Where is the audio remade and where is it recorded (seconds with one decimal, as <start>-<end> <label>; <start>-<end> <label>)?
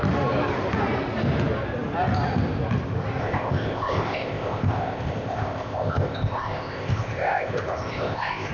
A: 0.0-3.2 recorded; 3.2-8.5 remade